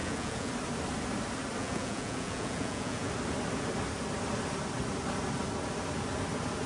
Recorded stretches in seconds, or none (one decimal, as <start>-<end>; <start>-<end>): 0.5-1.6; 3.1-6.7

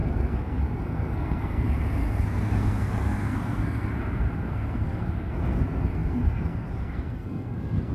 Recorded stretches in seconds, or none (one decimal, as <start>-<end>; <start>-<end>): none